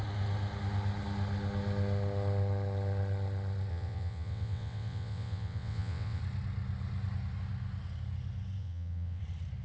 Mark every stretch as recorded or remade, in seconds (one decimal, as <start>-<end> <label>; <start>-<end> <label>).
0.0-3.7 recorded; 3.7-6.2 remade; 6.2-8.6 recorded; 8.6-9.2 remade; 9.2-9.6 recorded